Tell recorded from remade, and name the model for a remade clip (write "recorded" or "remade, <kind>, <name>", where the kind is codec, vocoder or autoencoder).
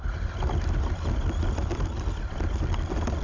recorded